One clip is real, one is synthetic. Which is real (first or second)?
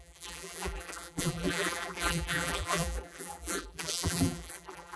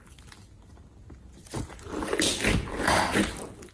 second